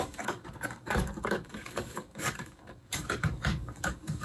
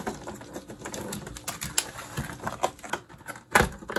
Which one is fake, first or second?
first